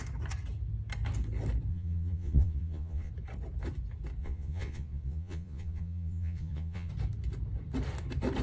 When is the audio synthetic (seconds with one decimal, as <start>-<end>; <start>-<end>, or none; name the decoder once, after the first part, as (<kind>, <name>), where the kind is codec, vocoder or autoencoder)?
1.7-3.1 (vocoder, Vocos); 4.2-6.9